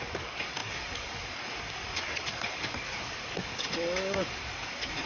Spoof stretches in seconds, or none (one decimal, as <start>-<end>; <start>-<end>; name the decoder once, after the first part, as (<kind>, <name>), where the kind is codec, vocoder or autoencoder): 0.0-5.1 (codec, DAC)